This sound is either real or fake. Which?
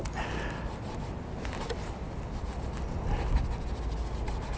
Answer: real